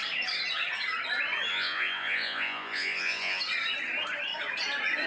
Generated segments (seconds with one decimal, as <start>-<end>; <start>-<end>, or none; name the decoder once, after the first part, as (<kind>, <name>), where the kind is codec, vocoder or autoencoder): 1.5-3.4 (vocoder, Vocos)